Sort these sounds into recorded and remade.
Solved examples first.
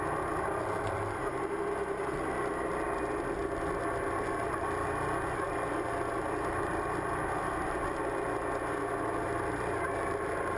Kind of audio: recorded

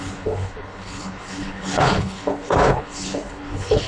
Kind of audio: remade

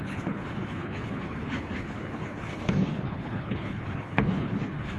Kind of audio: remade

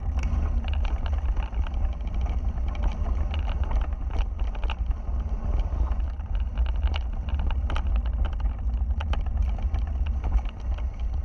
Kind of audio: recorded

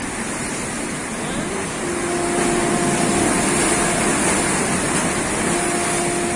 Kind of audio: recorded